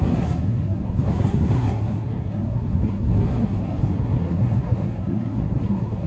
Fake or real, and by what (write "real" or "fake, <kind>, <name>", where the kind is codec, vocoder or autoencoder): fake, codec, SNAC